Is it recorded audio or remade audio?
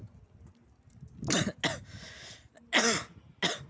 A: recorded